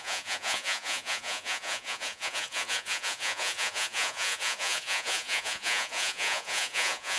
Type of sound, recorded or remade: remade